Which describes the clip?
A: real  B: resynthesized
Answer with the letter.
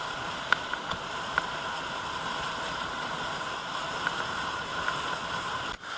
A